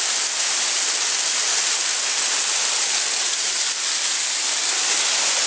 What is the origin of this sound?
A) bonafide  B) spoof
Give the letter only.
A